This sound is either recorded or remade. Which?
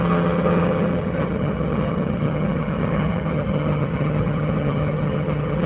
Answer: remade